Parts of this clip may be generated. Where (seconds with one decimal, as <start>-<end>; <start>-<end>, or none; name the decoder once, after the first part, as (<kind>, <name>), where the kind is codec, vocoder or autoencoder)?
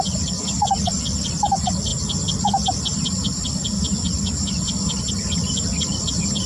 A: none